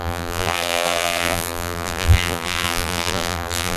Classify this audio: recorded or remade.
remade